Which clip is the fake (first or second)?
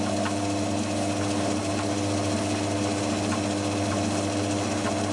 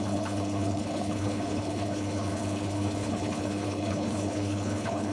second